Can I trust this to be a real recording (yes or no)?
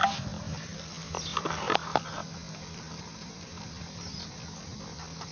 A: yes